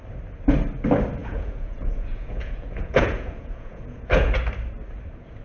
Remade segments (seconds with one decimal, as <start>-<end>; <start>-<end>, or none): 1.2-4.4